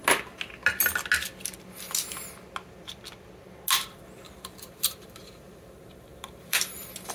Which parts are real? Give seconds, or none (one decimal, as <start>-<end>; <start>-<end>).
0.0-4.3